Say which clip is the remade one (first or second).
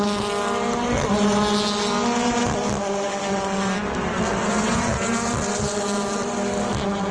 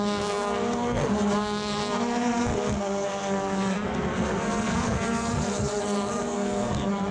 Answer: second